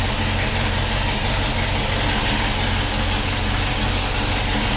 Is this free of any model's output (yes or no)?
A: yes